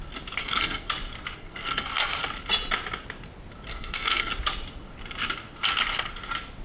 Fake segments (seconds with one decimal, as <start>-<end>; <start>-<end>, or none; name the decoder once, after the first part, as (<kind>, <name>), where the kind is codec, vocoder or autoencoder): 0.4-0.9 (codec, SNAC); 1.4-2.2; 3.7-4.3

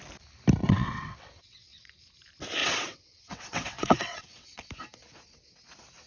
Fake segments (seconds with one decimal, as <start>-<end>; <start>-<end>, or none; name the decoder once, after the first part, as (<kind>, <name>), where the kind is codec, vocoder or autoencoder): 0.6-2.0 (vocoder, WaveNeXt); 2.6-4.7

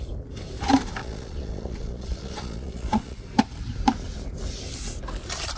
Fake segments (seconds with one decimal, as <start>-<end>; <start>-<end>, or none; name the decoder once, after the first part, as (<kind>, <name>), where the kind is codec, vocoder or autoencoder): 1.0-3.2 (vocoder, Vocos)

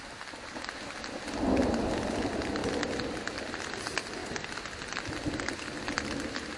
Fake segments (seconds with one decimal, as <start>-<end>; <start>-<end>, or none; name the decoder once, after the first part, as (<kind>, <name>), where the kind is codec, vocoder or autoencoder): none

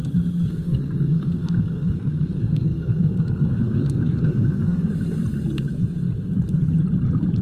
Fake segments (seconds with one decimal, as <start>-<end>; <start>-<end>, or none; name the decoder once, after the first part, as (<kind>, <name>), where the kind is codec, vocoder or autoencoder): 0.5-4.9 (codec, SNAC)